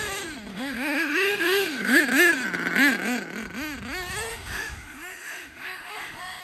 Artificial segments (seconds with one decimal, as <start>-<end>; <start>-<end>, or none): 0.5-2.0; 4.3-6.4